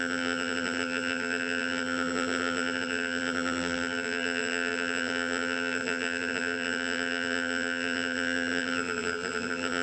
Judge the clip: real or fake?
fake